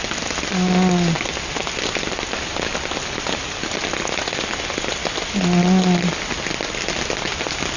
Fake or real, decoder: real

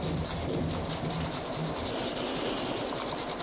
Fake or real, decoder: real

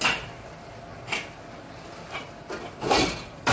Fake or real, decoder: real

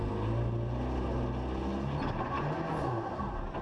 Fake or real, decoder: real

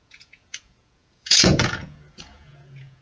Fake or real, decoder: fake, vocoder, Vocos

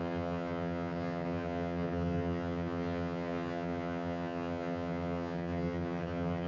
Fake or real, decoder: fake, vocoder, HiFi-GAN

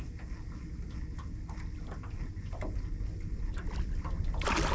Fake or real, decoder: real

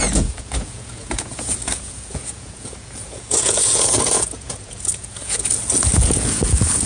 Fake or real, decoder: fake, vocoder, Vocos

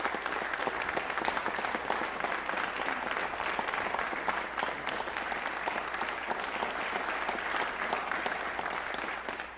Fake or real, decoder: fake, vocoder, BigVGAN v2